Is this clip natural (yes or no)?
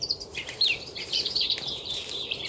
no